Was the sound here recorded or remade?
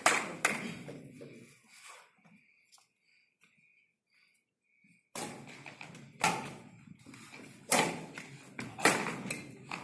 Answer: recorded